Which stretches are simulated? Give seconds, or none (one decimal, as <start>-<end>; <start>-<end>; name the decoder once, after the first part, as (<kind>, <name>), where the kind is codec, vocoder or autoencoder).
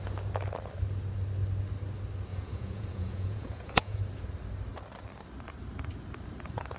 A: 2.3-4.0 (vocoder, Vocos)